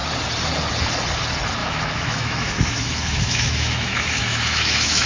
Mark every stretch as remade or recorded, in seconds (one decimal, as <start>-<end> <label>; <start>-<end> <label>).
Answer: 0.0-1.6 recorded; 1.6-5.1 remade